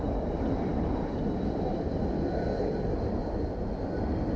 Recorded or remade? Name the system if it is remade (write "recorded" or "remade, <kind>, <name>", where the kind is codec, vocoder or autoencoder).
recorded